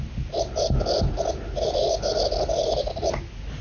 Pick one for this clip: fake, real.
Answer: real